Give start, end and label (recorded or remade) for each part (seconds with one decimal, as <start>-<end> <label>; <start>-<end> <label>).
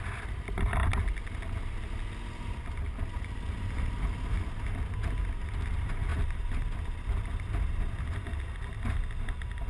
0.0-6.1 recorded; 6.1-7.5 remade; 7.5-9.7 recorded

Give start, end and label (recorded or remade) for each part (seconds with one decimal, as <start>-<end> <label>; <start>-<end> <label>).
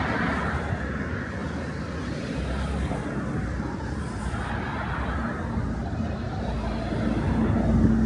0.0-8.1 recorded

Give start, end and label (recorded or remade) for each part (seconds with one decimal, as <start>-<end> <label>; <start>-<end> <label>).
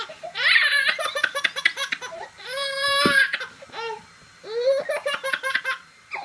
0.0-1.8 remade; 1.8-2.4 recorded; 2.4-3.3 remade; 3.3-5.3 recorded; 5.3-6.2 remade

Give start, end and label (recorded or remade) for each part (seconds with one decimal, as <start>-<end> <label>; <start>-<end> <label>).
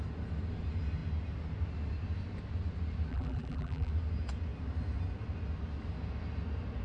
0.0-3.1 recorded; 3.1-3.9 remade; 3.9-6.8 recorded